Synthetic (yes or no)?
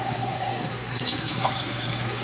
yes